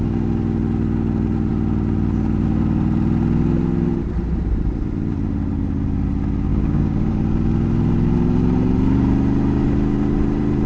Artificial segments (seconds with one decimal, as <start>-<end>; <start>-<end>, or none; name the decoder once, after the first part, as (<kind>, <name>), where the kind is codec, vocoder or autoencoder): 6.5-7.1 (codec, DAC)